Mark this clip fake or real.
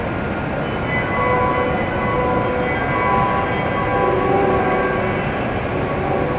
real